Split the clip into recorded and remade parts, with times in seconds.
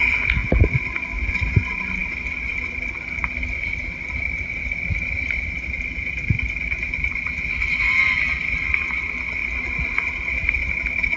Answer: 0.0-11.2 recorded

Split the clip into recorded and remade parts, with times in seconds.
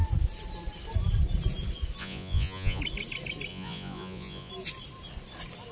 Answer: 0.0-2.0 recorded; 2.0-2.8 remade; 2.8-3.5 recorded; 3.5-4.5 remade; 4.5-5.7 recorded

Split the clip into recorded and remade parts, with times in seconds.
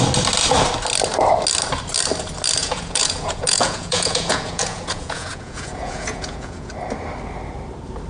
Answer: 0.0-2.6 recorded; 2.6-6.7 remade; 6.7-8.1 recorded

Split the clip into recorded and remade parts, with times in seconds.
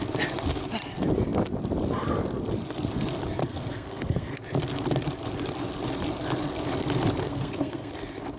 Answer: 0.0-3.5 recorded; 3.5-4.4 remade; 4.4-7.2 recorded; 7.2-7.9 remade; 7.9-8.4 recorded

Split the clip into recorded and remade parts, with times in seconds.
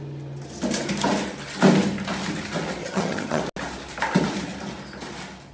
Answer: 0.0-2.8 recorded; 2.8-3.4 remade; 3.4-5.5 recorded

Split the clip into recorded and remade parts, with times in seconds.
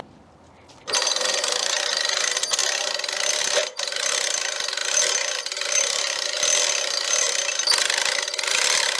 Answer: 0.0-2.6 remade; 2.6-3.3 recorded; 3.3-9.0 remade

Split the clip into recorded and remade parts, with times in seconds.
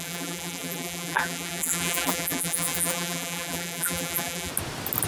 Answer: 0.0-4.5 remade; 4.5-5.1 recorded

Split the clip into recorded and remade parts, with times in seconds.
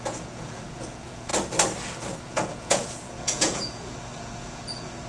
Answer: 0.0-1.3 remade; 1.3-2.2 recorded; 2.2-5.1 remade